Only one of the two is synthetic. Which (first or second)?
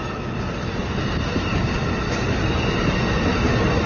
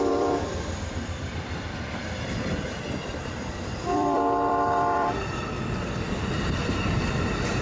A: second